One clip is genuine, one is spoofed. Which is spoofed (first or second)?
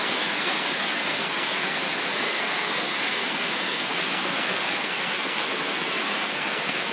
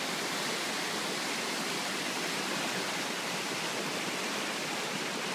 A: first